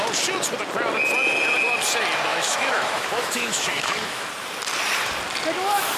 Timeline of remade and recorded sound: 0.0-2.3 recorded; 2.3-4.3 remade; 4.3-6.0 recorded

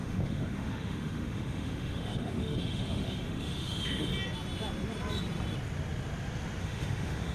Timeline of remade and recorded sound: 0.0-4.1 remade; 4.1-6.6 recorded; 6.6-7.3 remade

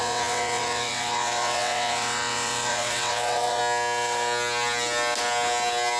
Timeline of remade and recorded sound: 0.0-3.6 remade; 3.6-6.0 recorded

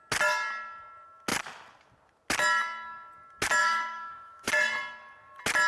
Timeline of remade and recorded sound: 0.0-3.6 recorded; 3.6-4.5 remade; 4.5-5.7 recorded

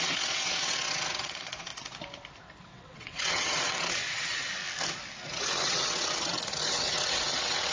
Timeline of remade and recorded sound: 0.0-1.7 remade; 1.7-2.6 recorded; 2.6-4.6 remade; 4.6-5.3 recorded; 5.3-7.7 remade

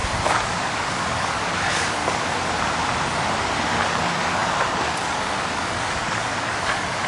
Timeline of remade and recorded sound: 0.0-0.5 recorded; 0.5-2.0 remade; 2.0-3.7 recorded; 3.7-7.1 remade